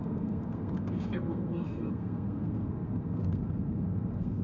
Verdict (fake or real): fake